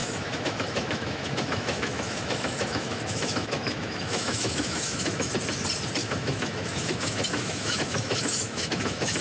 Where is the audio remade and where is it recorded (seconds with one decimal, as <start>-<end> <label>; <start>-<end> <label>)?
0.0-5.3 remade; 5.3-6.0 recorded; 6.0-9.2 remade